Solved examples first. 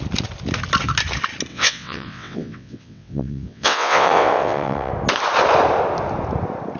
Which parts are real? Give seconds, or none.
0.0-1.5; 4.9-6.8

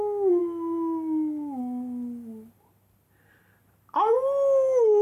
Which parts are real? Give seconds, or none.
0.0-5.0

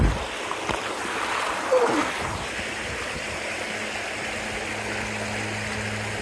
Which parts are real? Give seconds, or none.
0.0-6.2

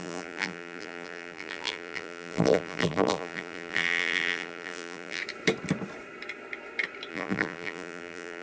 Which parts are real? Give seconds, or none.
5.2-7.1

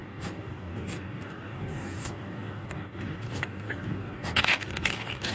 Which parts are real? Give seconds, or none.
none

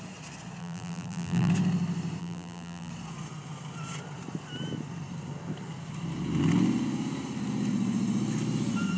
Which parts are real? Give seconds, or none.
0.0-0.6; 1.5-2.2; 2.9-9.0

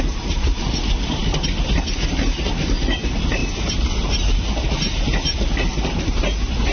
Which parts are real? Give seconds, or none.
0.0-6.7